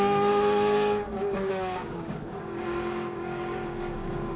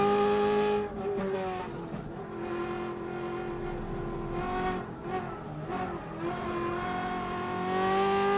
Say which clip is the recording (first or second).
second